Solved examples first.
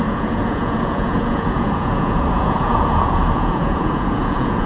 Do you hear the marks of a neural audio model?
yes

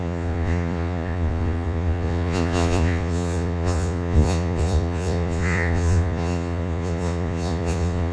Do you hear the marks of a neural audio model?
yes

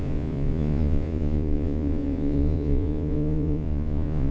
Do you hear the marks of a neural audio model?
yes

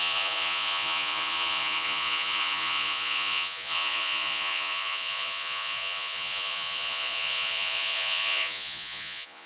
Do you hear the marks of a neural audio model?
yes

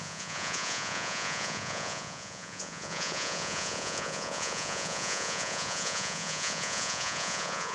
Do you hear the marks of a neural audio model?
yes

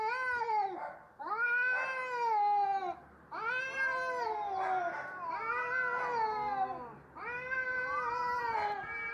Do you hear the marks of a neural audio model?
no